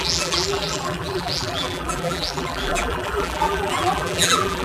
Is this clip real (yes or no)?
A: no